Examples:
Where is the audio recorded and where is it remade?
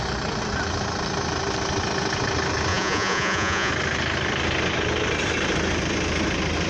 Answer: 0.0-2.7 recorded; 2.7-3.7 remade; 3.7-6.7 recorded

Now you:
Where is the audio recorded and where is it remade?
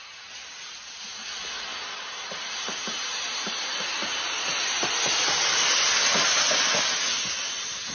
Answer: 0.0-1.7 recorded; 1.7-6.4 remade; 6.4-7.9 recorded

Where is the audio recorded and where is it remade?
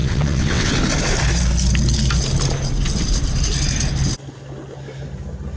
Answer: 0.0-0.7 remade; 0.7-5.6 recorded